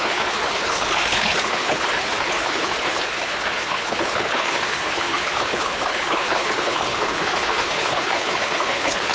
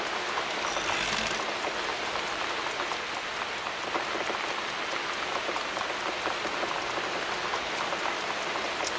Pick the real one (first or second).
second